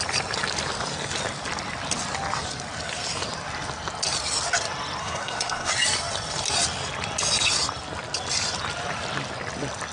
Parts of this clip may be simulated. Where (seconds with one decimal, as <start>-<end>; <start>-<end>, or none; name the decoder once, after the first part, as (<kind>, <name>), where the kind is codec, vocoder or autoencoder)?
5.0-5.7 (codec, SNAC)